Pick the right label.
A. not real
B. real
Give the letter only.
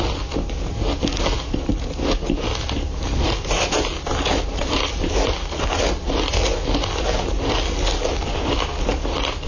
B